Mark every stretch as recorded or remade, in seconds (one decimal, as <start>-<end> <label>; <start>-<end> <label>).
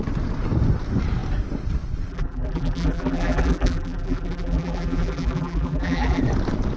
0.0-2.1 recorded; 2.1-6.2 remade; 6.2-6.8 recorded